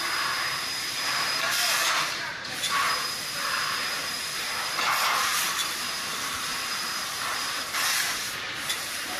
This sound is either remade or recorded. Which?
remade